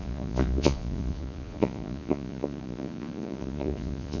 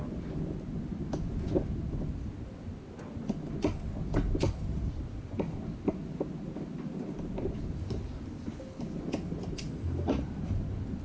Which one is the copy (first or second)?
first